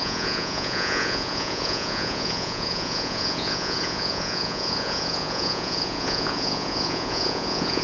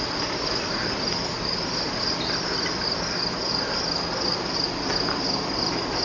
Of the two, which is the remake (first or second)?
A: first